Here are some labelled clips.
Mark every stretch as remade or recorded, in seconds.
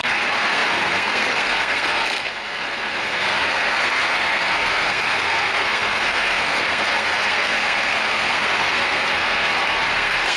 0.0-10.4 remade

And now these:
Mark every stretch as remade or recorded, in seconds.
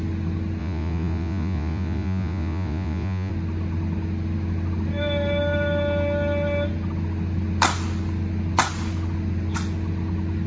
0.0-0.6 recorded; 0.6-3.3 remade; 3.3-10.5 recorded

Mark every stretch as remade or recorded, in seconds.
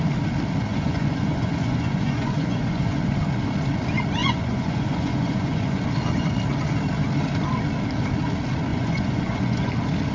0.0-0.7 recorded; 0.7-3.0 remade; 3.0-4.2 recorded; 4.2-5.8 remade; 5.8-8.7 recorded; 8.7-9.7 remade; 9.7-10.1 recorded